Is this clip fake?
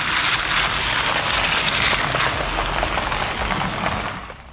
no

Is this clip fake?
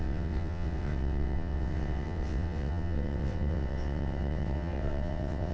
yes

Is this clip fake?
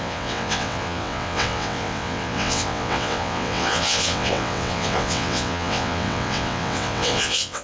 yes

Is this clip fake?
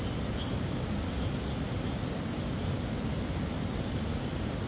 no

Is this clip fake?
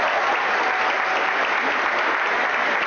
no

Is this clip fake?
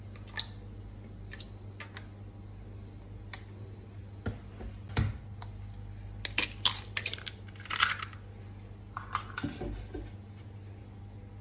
no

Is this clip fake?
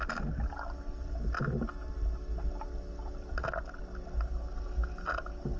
no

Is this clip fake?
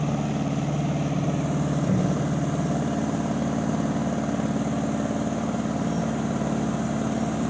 no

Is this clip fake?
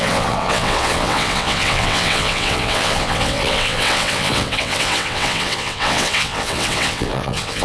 yes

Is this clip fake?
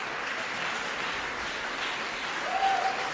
no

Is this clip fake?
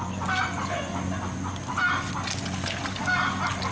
no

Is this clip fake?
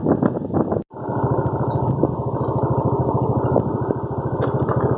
no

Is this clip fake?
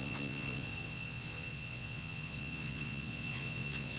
yes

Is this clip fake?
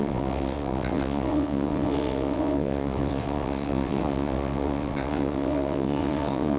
yes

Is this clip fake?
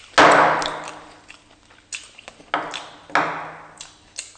no